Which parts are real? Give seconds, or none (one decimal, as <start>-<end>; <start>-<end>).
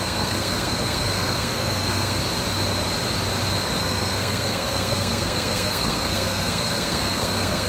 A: 2.2-3.8